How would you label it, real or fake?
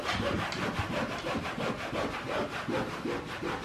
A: real